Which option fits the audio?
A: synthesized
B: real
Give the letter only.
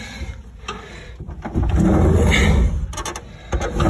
B